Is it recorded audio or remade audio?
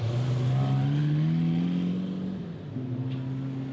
recorded